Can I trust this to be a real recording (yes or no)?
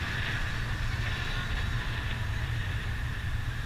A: yes